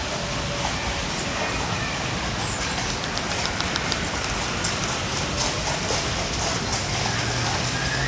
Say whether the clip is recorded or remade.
remade